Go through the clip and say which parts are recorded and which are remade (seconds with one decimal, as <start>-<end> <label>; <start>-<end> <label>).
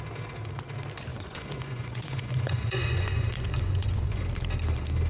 0.0-1.1 recorded; 1.1-4.2 remade; 4.2-5.1 recorded